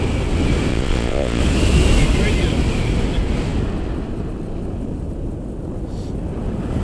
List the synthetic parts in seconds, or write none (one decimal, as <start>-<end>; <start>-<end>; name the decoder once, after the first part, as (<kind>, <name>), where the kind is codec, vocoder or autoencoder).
0.7-1.4 (vocoder, Vocos)